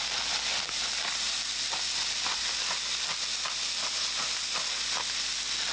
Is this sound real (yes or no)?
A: yes